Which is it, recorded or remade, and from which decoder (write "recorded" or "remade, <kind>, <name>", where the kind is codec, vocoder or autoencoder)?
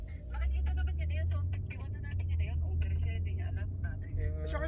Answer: recorded